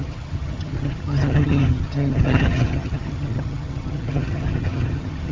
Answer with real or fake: fake